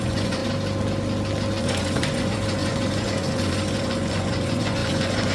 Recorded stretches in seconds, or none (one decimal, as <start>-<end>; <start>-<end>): 0.4-1.6